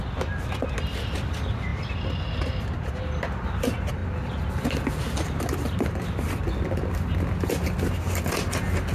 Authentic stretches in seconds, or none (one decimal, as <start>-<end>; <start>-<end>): 0.0-8.9